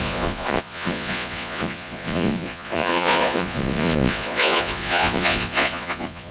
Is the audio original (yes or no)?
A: no